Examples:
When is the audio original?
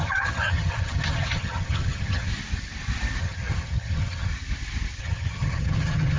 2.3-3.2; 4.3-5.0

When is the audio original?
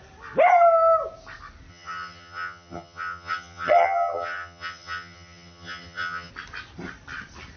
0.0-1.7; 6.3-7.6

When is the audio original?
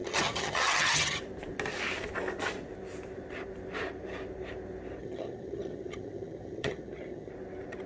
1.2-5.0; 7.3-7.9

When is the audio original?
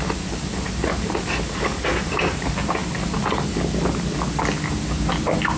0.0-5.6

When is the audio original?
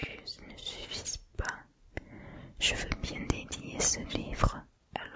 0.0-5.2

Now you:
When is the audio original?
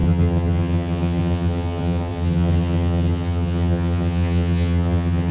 none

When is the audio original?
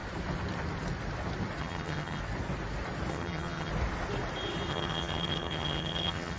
0.0-1.6; 2.2-3.1; 3.7-4.7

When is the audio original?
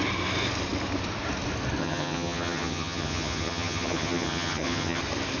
0.0-1.8; 5.0-5.4